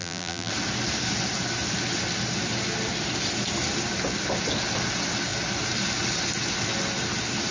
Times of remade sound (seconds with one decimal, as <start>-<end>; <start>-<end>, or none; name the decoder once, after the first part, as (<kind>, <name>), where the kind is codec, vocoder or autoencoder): 0.0-0.5 (vocoder, BigVGAN v2)